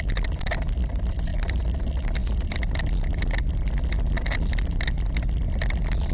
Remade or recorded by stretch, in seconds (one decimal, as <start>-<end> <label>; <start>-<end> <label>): 0.0-6.1 recorded

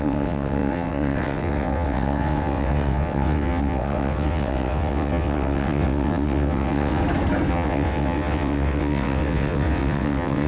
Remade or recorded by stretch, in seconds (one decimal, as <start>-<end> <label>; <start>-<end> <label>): 0.0-7.0 remade; 7.0-7.5 recorded; 7.5-10.5 remade